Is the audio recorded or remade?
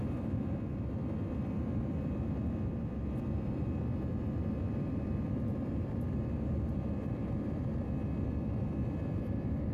remade